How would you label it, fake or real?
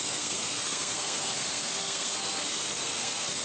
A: fake